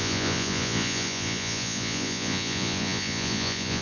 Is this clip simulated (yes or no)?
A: yes